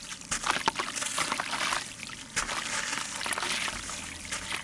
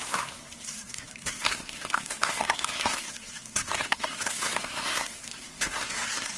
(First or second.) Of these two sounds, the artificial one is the second